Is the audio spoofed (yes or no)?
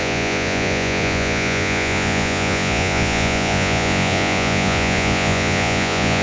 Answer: yes